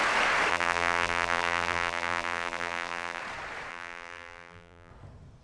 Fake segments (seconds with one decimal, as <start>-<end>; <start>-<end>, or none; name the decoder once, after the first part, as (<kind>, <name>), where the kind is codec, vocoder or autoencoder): 0.5-3.2 (vocoder, BigVGAN v2); 3.7-4.9